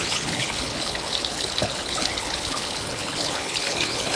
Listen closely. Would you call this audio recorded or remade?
remade